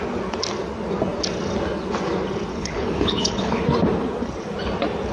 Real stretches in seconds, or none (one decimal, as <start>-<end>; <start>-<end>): 0.0-2.5; 3.6-5.1

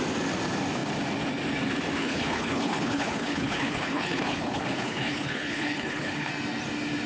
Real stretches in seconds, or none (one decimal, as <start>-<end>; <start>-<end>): 0.0-2.0; 6.3-7.1

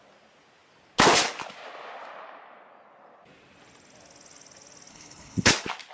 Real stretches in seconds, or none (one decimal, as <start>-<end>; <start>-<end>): 0.0-4.9; 5.5-5.9

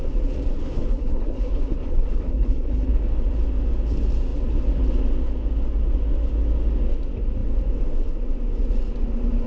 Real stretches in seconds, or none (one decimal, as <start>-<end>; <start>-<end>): 0.0-0.5; 2.9-9.5

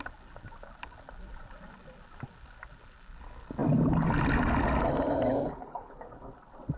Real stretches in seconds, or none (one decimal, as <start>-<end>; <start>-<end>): 0.0-5.3; 6.0-6.8

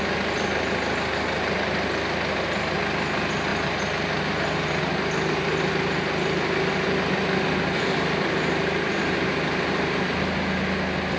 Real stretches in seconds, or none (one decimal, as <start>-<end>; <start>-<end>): 0.0-11.2